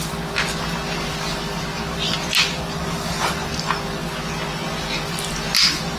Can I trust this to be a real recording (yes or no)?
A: yes